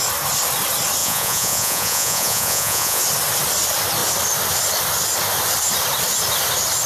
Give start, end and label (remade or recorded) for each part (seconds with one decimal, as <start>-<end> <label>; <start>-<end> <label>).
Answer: 0.0-1.0 recorded; 1.0-3.0 remade; 3.0-6.9 recorded